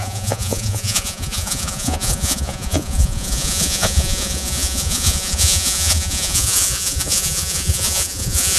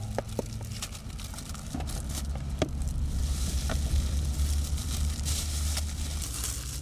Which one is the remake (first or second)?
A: first